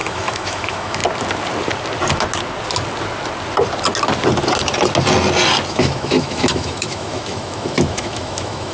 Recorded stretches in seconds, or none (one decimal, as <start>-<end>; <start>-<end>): 1.0-5.7